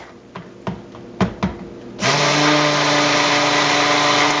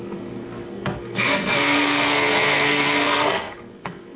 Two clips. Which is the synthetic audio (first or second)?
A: second